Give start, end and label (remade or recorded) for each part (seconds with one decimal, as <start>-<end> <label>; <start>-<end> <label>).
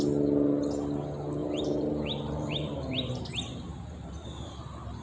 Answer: 0.0-1.4 recorded; 1.4-3.2 remade; 3.2-3.7 recorded; 3.7-4.5 remade; 4.5-5.0 recorded